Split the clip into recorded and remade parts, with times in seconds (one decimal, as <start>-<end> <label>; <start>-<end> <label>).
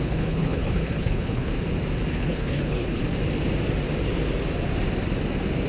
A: 0.0-1.5 remade; 1.5-2.1 recorded; 2.1-3.0 remade; 3.0-5.7 recorded